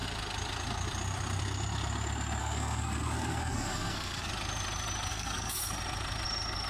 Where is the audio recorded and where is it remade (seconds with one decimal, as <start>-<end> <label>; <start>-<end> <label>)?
0.0-2.4 recorded; 2.4-4.3 remade; 4.3-5.1 recorded; 5.1-5.6 remade; 5.6-6.7 recorded